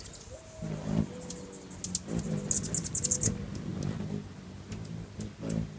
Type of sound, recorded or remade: recorded